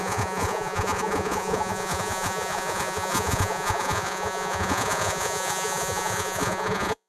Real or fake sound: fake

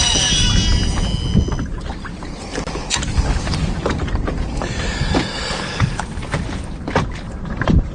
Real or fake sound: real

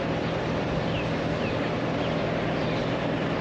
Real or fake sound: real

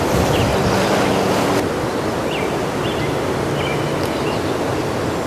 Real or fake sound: real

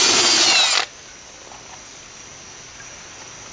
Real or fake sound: real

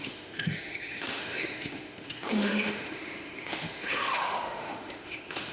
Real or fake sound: fake